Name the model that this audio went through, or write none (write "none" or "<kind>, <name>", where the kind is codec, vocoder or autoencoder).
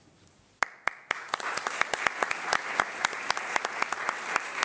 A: none